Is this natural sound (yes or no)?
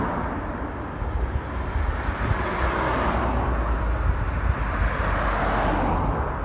yes